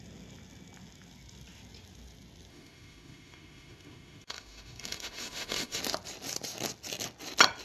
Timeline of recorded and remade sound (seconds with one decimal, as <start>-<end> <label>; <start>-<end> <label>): 0.0-2.5 recorded; 2.5-5.8 remade; 5.8-7.6 recorded